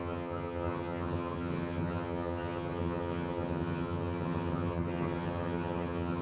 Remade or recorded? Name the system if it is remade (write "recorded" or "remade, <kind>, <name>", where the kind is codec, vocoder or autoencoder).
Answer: remade, vocoder, HiFi-GAN